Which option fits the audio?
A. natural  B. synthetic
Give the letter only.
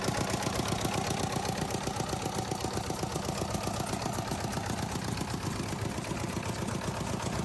A